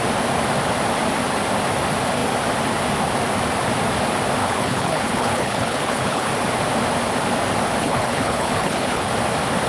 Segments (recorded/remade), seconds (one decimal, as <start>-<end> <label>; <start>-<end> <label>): 0.0-4.4 recorded; 4.4-6.3 remade; 6.3-7.8 recorded; 7.8-9.1 remade; 9.1-9.7 recorded